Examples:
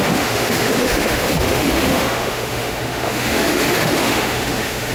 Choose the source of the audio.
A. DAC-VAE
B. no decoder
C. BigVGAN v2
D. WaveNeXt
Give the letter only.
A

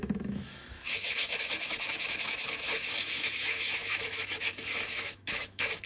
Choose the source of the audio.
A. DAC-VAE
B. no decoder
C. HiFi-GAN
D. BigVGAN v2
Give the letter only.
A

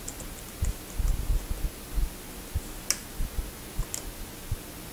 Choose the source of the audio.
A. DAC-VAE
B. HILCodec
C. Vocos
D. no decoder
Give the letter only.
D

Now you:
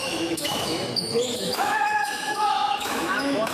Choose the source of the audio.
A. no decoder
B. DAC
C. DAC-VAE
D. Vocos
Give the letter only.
C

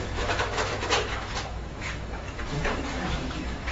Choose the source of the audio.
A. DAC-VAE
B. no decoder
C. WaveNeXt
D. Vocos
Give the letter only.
A